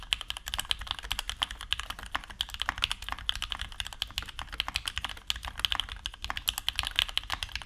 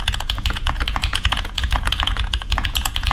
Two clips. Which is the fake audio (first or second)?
second